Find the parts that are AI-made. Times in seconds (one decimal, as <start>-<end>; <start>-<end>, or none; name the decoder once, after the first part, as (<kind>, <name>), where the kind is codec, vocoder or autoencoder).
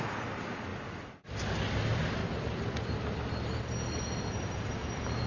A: none